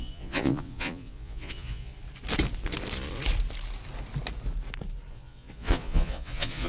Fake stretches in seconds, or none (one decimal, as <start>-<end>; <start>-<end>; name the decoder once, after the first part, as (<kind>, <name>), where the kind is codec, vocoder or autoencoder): 0.0-1.9 (vocoder, Vocos); 5.1-6.7